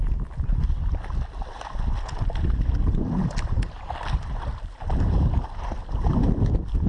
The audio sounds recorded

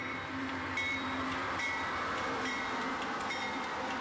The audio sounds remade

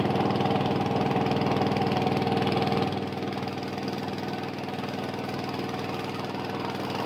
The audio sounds recorded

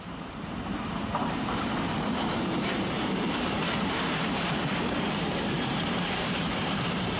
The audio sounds remade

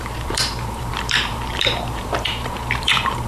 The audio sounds remade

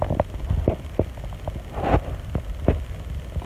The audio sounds remade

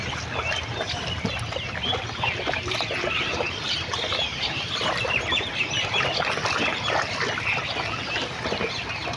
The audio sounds recorded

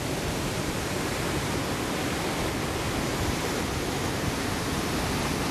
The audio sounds recorded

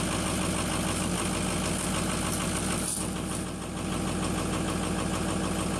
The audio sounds recorded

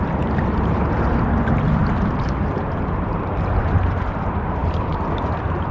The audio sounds remade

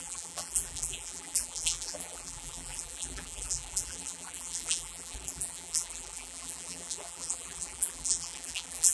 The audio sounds remade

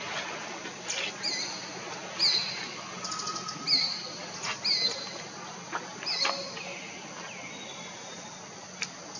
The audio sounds recorded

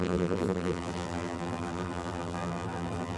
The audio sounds remade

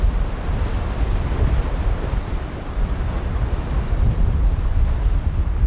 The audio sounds remade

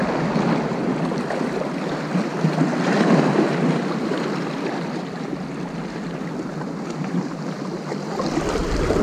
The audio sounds recorded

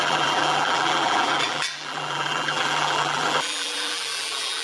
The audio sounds remade